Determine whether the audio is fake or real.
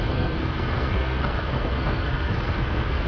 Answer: fake